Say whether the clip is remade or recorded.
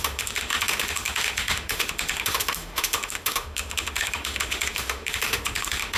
remade